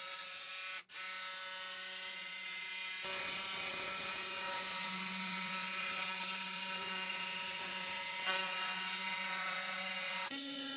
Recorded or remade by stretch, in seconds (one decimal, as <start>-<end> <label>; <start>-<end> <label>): 0.0-0.5 remade; 0.5-2.1 recorded; 2.1-2.7 remade; 2.7-3.2 recorded; 3.2-10.8 remade